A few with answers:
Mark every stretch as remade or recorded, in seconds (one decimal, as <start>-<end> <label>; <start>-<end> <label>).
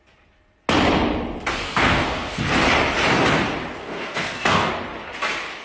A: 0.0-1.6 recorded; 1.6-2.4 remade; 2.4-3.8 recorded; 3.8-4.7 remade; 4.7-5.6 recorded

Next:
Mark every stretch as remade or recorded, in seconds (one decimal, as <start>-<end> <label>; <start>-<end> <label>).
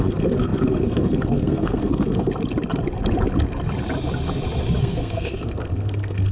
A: 0.0-2.3 remade; 2.3-4.8 recorded; 4.8-6.3 remade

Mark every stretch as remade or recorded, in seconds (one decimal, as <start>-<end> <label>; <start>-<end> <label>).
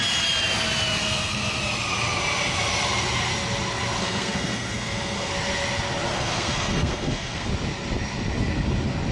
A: 0.0-1.0 recorded; 1.0-1.6 remade; 1.6-4.0 recorded; 4.0-5.3 remade; 5.3-6.1 recorded; 6.1-7.5 remade; 7.5-9.1 recorded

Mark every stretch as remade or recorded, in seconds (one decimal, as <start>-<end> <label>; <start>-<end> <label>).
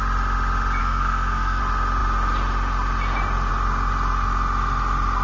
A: 0.0-0.8 recorded; 0.8-1.6 remade; 1.6-5.2 recorded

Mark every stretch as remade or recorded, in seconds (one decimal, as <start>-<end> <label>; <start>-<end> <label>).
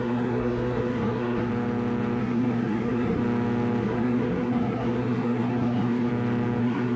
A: 0.0-1.5 remade; 1.5-2.2 recorded; 2.2-3.2 remade; 3.2-3.8 recorded; 3.8-6.1 remade; 6.1-6.6 recorded; 6.6-7.0 remade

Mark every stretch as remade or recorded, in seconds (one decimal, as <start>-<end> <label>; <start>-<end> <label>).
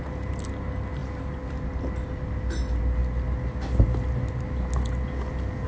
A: 0.0-5.7 recorded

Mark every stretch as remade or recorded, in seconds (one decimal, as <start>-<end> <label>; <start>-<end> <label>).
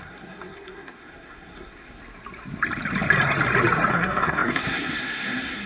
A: 0.0-2.0 remade; 2.0-3.9 recorded; 3.9-5.7 remade